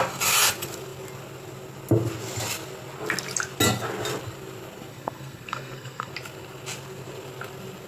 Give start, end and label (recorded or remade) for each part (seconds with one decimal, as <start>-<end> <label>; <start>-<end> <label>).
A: 0.0-4.9 recorded; 4.9-6.1 remade; 6.1-7.9 recorded